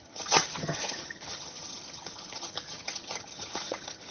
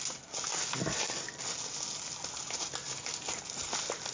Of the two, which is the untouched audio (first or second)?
second